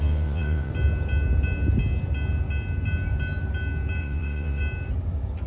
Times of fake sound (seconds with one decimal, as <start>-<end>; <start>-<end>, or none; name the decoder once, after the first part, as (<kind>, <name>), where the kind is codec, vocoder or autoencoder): 0.0-0.7 (vocoder, WaveNeXt); 4.0-4.6

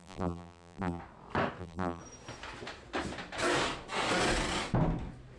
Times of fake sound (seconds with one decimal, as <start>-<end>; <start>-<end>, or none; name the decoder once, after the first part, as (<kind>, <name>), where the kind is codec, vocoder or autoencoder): 0.0-1.0 (vocoder, BigVGAN v2); 1.6-2.0